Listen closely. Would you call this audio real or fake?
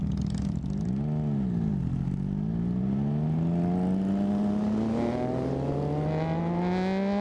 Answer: real